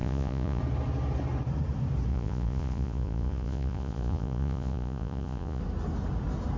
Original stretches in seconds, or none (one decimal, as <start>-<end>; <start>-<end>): 0.6-2.1; 5.6-6.6